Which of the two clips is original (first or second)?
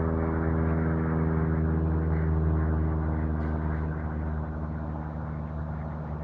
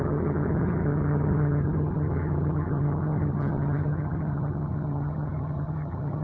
first